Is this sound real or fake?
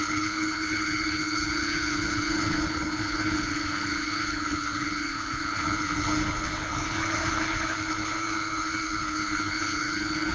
fake